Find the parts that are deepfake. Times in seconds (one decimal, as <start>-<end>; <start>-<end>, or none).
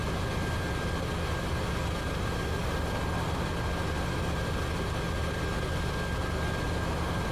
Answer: none